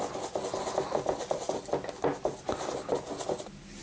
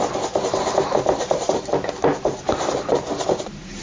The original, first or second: first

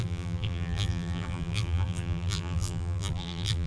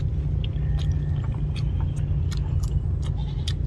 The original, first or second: second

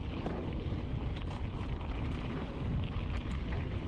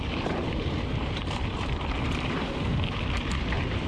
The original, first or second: first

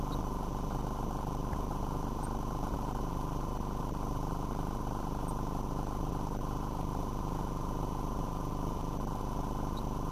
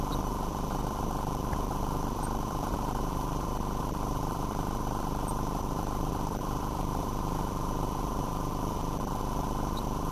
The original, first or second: first